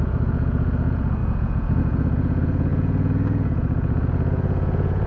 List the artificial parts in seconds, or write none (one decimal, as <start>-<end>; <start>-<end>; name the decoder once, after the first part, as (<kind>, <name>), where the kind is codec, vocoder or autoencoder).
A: 0.0-5.1 (vocoder, Vocos)